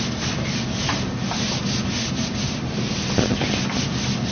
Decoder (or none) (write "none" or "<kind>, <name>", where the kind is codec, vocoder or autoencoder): none